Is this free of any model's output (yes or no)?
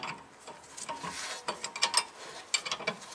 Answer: yes